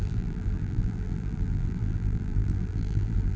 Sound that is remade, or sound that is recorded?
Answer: remade